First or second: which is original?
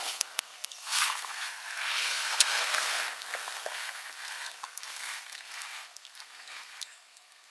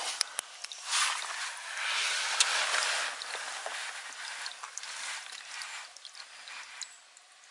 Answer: second